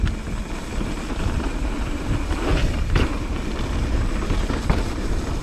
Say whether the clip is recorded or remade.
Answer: recorded